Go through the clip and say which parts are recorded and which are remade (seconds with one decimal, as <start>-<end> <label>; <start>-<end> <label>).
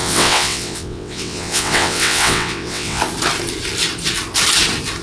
0.0-3.0 remade; 3.0-5.0 recorded